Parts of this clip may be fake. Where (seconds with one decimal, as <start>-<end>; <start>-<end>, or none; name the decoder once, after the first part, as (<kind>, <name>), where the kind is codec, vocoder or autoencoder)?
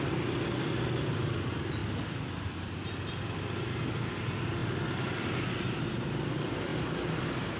1.8-2.9 (vocoder, BigVGAN v2)